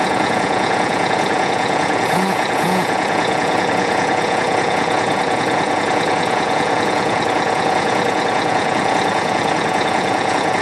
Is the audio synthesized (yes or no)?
yes